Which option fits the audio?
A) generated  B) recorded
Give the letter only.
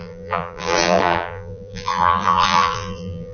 A